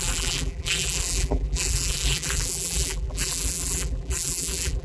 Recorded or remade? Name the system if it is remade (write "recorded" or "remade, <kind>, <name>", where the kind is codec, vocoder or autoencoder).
remade, vocoder, BigVGAN v2